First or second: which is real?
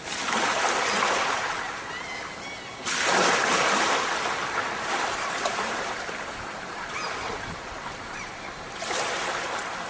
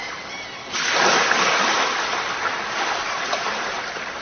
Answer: first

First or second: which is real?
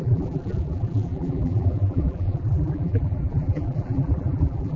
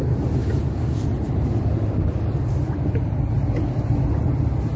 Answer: second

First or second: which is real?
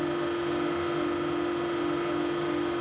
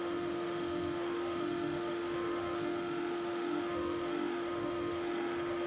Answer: first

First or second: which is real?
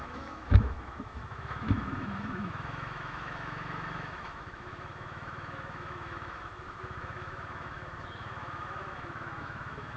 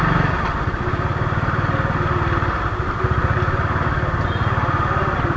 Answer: second